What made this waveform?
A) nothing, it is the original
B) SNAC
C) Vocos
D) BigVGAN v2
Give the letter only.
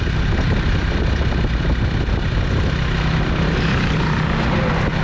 A